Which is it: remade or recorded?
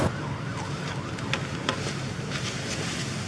recorded